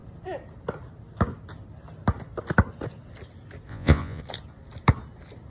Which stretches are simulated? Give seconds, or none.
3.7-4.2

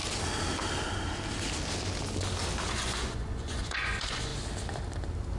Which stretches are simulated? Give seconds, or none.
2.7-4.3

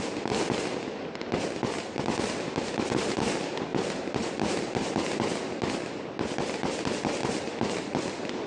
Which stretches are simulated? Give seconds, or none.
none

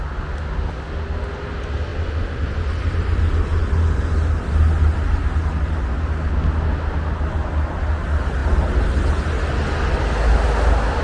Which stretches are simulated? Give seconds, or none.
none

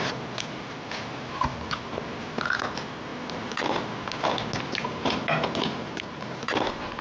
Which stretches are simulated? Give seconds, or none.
none